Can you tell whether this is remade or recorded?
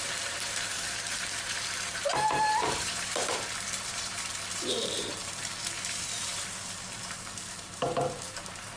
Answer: remade